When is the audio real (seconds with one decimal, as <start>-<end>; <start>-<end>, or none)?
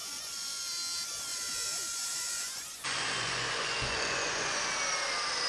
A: 0.6-1.3; 4.6-5.5